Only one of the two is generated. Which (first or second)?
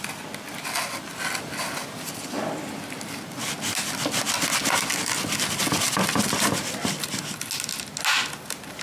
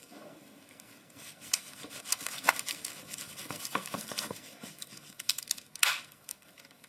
second